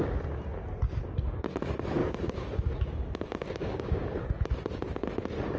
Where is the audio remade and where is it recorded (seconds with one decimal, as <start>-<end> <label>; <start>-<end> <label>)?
0.0-2.0 recorded; 2.0-4.1 remade; 4.1-5.6 recorded